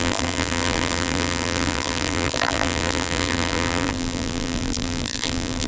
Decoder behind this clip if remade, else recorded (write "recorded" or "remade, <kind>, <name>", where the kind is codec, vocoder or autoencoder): remade, vocoder, BigVGAN v2